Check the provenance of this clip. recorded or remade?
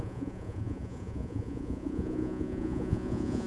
remade